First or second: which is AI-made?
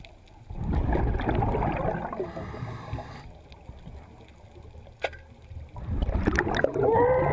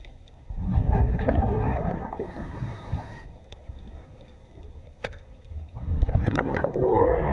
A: second